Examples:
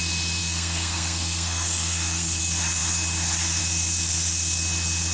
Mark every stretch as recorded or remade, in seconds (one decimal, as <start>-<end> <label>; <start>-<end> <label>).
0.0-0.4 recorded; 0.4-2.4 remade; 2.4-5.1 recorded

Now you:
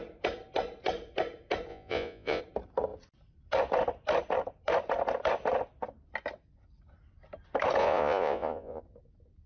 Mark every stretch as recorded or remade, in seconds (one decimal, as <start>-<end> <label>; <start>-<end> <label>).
0.0-1.7 recorded; 1.7-2.4 remade; 2.4-7.8 recorded; 7.8-8.8 remade; 8.8-9.5 recorded

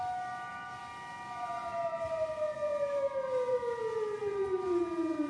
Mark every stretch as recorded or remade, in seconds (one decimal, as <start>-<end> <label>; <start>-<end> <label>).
0.0-5.3 recorded